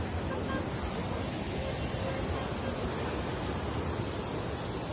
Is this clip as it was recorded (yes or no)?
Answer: yes